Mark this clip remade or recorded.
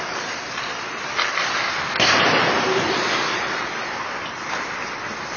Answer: remade